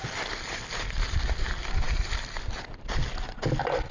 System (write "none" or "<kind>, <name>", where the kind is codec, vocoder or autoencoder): vocoder, BigVGAN v2